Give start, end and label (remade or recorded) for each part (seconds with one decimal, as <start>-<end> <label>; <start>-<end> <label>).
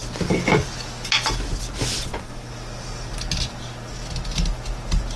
0.0-5.2 recorded